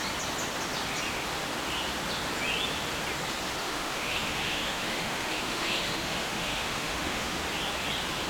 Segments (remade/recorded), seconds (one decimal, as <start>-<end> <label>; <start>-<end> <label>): 0.0-3.6 recorded; 3.6-7.4 remade; 7.4-8.3 recorded